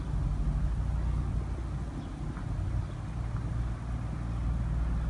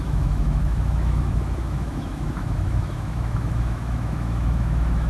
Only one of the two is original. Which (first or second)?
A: first